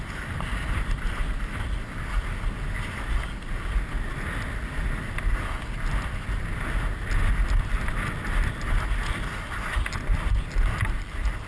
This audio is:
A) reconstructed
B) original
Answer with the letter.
B